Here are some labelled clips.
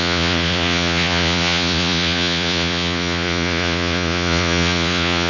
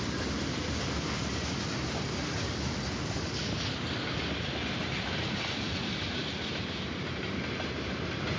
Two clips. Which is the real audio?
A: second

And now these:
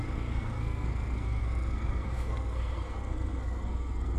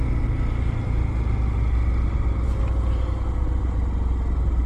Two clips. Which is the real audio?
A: second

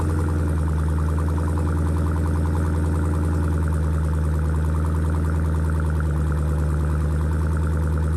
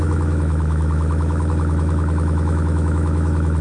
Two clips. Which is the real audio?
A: first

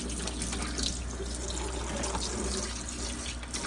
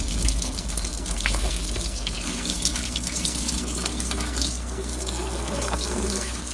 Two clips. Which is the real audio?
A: first